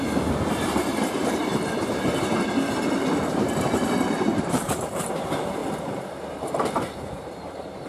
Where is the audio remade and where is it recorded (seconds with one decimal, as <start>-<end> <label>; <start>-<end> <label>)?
0.0-1.5 remade; 1.5-3.3 recorded; 3.3-5.6 remade; 5.6-6.4 recorded; 6.4-7.9 remade